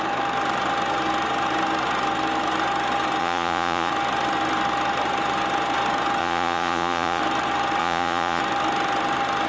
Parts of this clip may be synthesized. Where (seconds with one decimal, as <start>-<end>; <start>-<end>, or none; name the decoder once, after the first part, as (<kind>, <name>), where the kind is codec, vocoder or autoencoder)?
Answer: 3.2-3.9 (vocoder, Vocos); 6.2-7.2; 7.8-8.4